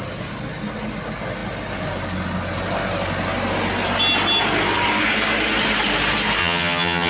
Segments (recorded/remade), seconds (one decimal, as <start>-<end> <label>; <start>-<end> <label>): 0.0-6.4 recorded; 6.4-7.1 remade